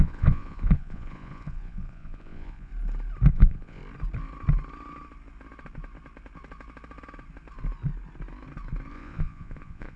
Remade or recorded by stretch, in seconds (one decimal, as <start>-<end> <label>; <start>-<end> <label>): 0.0-2.7 remade; 2.7-3.3 recorded; 3.3-3.8 remade; 3.8-8.9 recorded; 8.9-10.0 remade